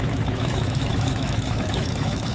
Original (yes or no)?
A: no